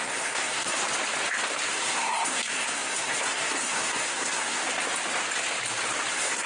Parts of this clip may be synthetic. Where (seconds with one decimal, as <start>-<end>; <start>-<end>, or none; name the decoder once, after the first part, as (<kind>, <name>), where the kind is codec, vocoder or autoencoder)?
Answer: 0.0-0.8 (codec, SNAC); 1.7-4.6; 6.1-6.5